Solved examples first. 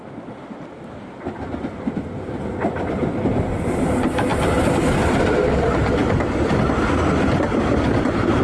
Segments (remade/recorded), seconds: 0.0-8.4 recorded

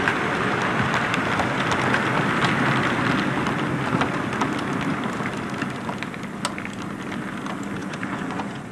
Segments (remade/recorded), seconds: 0.0-7.8 recorded; 7.8-8.7 remade

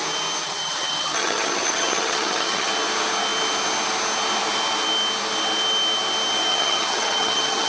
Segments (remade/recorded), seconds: 0.0-0.4 recorded; 0.4-2.7 remade; 2.7-6.5 recorded; 6.5-7.7 remade

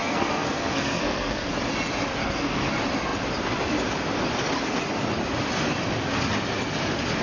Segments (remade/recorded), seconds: 0.0-1.5 remade; 1.5-2.2 recorded; 2.2-2.7 remade; 2.7-7.2 recorded

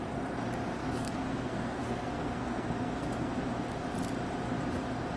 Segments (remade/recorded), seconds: 0.0-0.8 recorded; 0.8-3.3 remade; 3.3-5.2 recorded

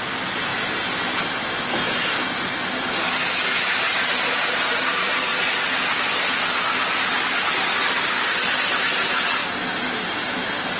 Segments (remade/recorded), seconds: 0.0-0.5 remade; 0.5-2.9 recorded; 2.9-9.4 remade; 9.4-10.8 recorded

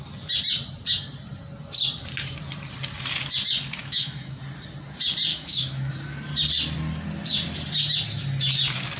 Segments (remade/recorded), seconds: 0.0-3.8 recorded; 3.8-4.4 remade; 4.4-5.3 recorded; 5.3-5.9 remade; 5.9-9.0 recorded